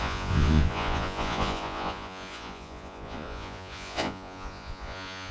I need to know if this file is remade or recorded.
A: remade